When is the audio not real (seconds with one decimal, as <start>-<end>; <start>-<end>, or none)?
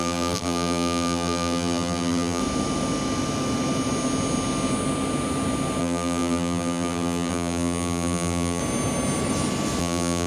0.0-2.4; 5.8-8.6; 9.8-10.3